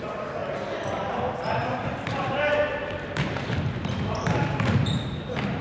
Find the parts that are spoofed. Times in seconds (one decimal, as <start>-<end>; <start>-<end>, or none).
1.6-5.0